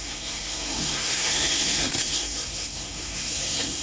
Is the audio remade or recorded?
remade